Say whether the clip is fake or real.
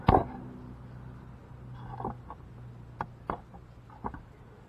real